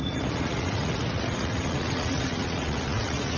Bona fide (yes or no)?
no